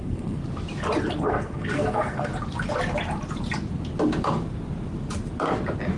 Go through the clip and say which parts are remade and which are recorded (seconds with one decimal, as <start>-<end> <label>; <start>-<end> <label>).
0.0-0.4 remade; 0.4-1.2 recorded; 1.2-2.3 remade; 2.3-6.0 recorded